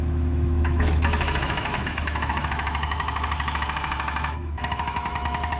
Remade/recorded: remade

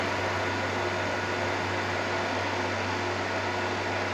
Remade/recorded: recorded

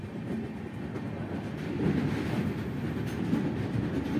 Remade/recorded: recorded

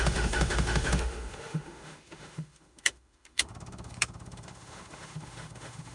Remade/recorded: remade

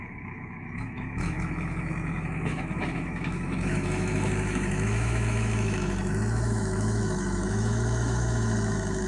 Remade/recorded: remade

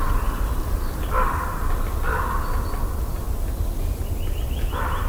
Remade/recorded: recorded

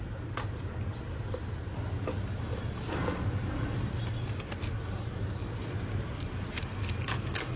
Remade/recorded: recorded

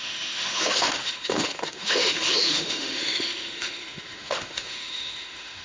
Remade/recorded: remade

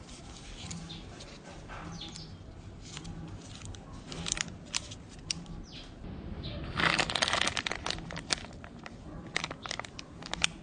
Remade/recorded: recorded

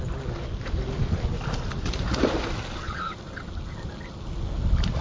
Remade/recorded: recorded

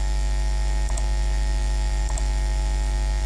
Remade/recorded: remade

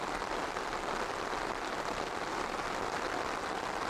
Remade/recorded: recorded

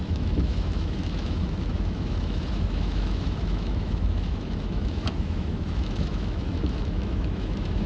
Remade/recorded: remade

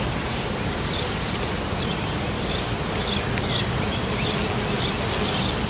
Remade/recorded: recorded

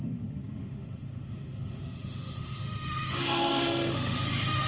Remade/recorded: remade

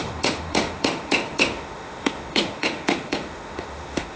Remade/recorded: remade